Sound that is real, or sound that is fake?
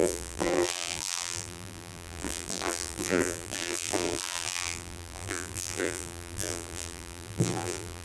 fake